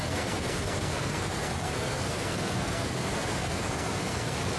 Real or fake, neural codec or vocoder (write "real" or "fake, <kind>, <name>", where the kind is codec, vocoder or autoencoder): fake, codec, SNAC